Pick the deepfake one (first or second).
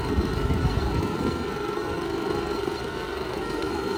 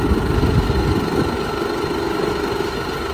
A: first